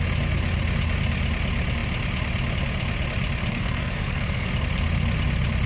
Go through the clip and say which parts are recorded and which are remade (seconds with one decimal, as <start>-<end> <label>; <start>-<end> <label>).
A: 0.0-3.5 recorded; 3.5-4.5 remade; 4.5-5.7 recorded